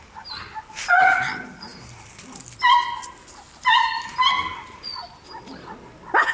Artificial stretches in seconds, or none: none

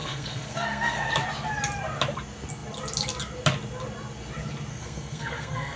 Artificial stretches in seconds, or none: 0.0-1.1 (codec, SNAC); 4.7-5.8

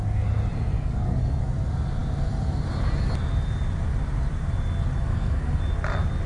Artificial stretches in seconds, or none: 0.7-1.4 (codec, SNAC); 5.1-5.6

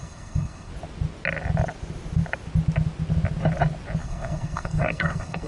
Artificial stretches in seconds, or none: 0.0-0.7 (codec, SNAC); 4.0-5.5